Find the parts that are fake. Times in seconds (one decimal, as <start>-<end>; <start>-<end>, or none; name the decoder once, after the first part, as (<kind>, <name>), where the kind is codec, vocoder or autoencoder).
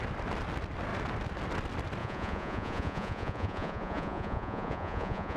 2.0-5.4 (vocoder, Vocos)